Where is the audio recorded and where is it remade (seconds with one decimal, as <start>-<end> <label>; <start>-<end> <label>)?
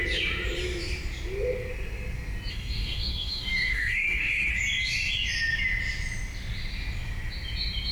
0.0-2.5 recorded; 2.5-4.5 remade; 4.5-7.9 recorded